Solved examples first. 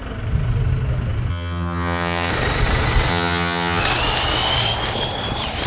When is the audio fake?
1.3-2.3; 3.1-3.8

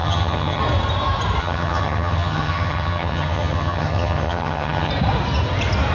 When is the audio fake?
0.0-0.6; 1.4-4.9

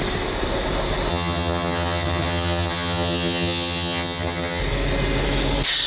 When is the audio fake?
1.1-4.6

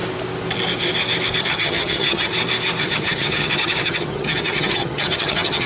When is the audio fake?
1.4-2.3; 2.8-5.7

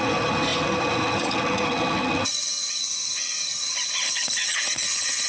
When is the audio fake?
0.0-5.3